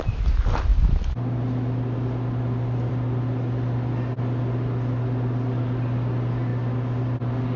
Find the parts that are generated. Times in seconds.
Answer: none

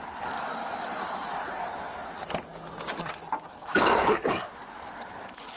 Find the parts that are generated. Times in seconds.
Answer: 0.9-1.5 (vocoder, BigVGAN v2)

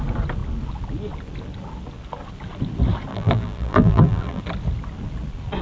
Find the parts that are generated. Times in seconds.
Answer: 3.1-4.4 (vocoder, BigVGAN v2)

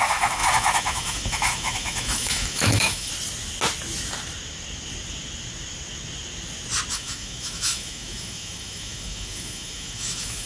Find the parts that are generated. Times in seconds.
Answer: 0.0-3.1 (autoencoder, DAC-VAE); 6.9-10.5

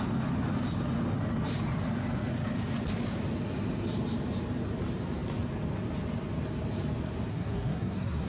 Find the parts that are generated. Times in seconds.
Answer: 7.3-8.3 (codec, SNAC)